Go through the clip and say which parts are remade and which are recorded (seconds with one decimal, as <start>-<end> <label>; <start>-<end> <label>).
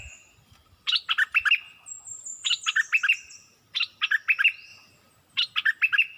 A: 0.0-6.2 recorded